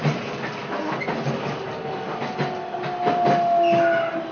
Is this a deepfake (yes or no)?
no